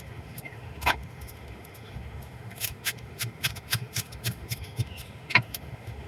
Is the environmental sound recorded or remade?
remade